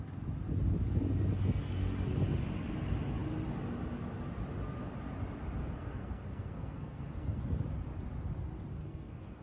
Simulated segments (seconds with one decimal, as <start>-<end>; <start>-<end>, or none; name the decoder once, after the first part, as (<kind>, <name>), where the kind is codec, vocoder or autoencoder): 5.6-7.4 (codec, SNAC); 8.8-9.4